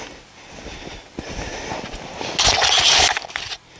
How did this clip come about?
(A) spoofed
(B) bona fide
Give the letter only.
B